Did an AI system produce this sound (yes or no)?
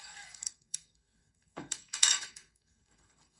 yes